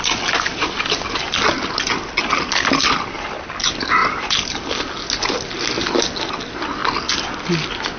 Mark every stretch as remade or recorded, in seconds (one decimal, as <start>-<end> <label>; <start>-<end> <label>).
0.0-8.0 recorded